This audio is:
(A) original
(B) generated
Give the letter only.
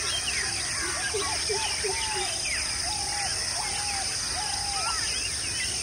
A